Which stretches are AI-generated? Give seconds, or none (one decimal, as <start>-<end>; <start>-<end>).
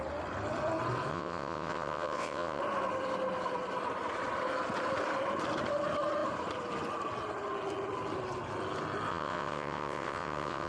1.1-2.6; 9.1-10.7